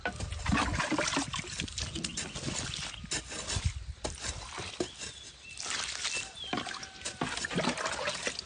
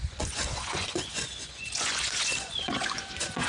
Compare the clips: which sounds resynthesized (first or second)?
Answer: second